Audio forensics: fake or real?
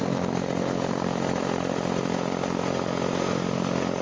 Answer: real